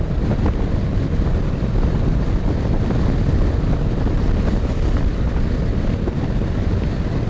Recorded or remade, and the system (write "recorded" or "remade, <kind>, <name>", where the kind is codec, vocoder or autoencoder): recorded